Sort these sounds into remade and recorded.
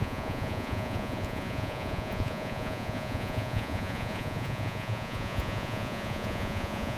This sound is remade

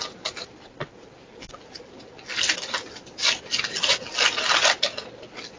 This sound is recorded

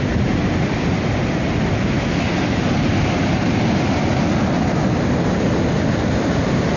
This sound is recorded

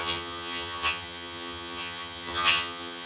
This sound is remade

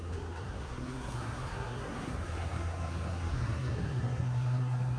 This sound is remade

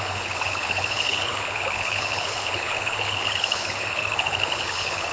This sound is remade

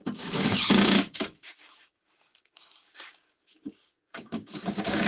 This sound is remade